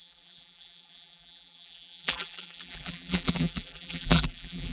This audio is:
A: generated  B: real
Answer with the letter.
A